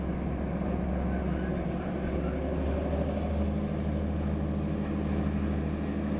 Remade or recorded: recorded